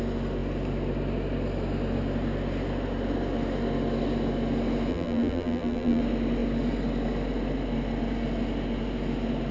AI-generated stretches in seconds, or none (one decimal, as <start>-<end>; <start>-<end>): 4.9-6.0